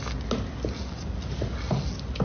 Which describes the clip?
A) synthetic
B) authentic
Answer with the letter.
B